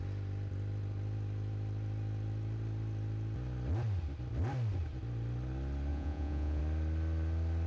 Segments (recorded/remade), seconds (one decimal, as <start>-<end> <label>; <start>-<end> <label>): 0.0-5.9 recorded; 5.9-6.6 remade; 6.6-7.7 recorded